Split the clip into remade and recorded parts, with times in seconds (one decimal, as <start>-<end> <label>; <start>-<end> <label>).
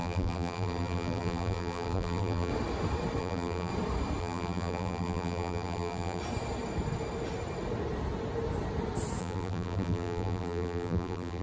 0.0-2.5 remade; 2.5-3.2 recorded; 3.2-3.7 remade; 3.7-4.2 recorded; 4.2-6.2 remade; 6.2-9.2 recorded; 9.2-11.4 remade